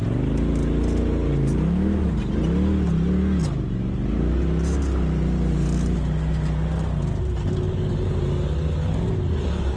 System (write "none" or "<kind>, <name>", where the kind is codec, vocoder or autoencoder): none